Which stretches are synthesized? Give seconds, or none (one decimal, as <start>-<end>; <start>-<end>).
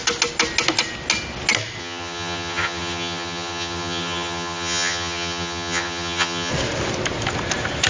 1.8-6.5